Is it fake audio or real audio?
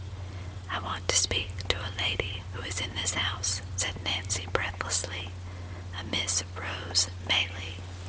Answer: real